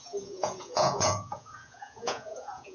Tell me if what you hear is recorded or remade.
remade